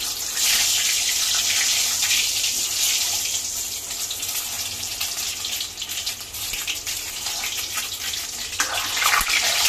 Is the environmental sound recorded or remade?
recorded